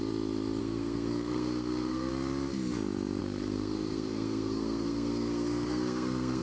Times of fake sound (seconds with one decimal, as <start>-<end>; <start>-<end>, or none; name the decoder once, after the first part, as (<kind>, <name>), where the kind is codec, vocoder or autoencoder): 0.6-2.1 (codec, SNAC); 3.2-6.4

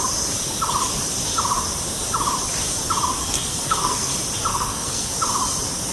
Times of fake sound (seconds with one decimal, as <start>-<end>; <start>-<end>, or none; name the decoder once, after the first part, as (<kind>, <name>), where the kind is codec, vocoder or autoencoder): 3.2-4.1 (codec, SNAC); 4.5-5.1

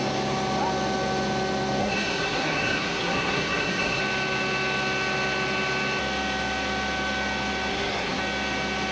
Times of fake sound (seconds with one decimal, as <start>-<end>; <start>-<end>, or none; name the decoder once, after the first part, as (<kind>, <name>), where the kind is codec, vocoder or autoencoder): 1.8-4.0 (codec, SNAC); 7.7-8.2

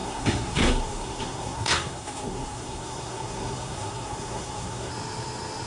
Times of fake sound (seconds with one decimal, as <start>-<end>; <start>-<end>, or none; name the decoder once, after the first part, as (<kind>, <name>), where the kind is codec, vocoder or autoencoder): 0.0-4.9 (codec, SNAC)

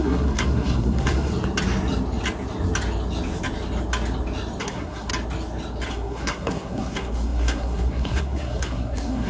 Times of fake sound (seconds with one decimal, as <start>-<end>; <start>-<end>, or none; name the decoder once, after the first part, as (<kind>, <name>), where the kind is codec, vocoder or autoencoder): 0.0-1.3 (codec, SNAC); 4.6-5.1; 5.9-9.3